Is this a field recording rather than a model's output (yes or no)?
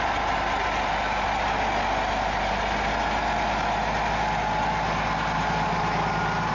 yes